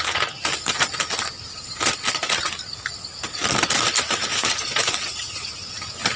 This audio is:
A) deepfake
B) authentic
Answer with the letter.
B